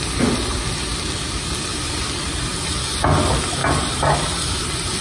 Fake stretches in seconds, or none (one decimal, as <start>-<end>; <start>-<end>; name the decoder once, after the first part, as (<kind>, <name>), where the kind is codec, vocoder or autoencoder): none